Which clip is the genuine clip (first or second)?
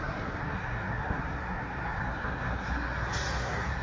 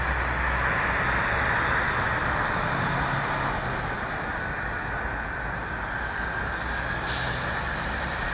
second